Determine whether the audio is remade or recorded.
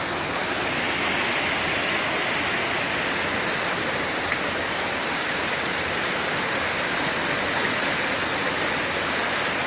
recorded